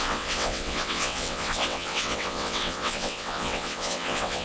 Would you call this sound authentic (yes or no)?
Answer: no